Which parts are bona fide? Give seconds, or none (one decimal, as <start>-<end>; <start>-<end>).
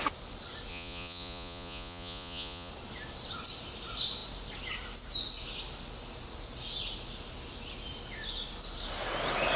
0.0-0.7; 2.7-9.6